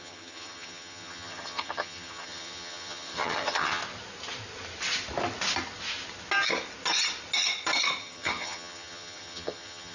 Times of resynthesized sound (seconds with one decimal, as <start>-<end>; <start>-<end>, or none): 0.0-3.8; 8.0-9.9